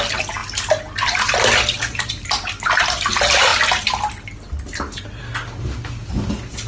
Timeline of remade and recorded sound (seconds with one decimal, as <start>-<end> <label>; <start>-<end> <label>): 0.0-6.7 recorded